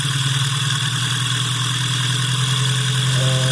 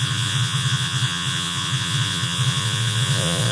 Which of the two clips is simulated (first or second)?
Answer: second